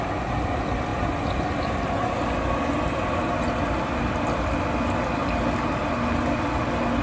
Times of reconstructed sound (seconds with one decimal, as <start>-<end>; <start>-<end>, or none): none